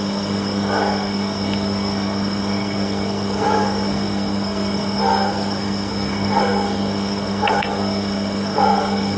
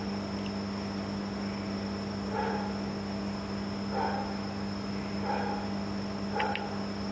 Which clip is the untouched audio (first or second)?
second